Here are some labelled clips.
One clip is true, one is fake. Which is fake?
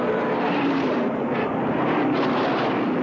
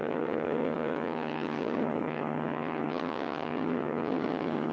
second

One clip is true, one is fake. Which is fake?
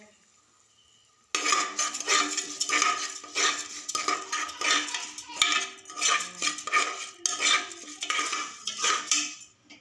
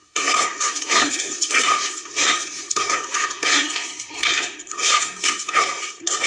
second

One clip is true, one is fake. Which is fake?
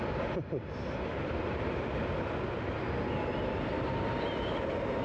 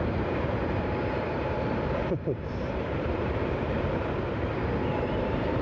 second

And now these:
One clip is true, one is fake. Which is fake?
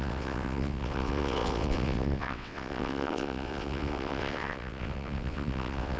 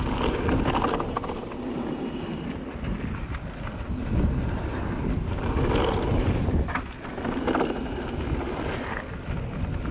first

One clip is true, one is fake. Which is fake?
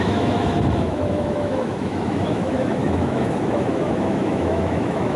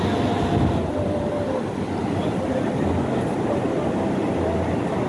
first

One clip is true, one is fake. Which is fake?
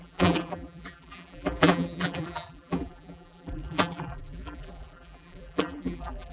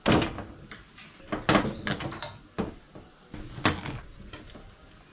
first